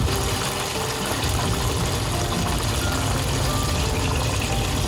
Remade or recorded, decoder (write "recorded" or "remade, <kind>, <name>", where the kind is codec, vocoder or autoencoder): recorded